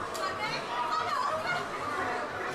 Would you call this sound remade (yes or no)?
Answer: no